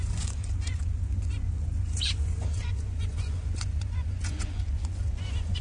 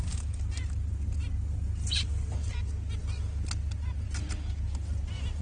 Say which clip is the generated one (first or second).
first